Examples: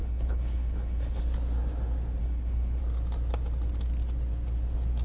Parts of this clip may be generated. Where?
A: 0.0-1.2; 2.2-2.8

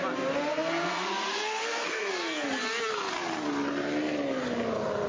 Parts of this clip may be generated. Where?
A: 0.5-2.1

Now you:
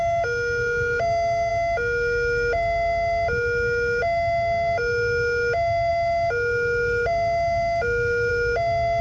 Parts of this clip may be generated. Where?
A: none

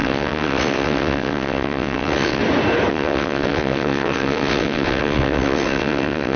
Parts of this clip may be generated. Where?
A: 0.0-2.4; 2.9-6.4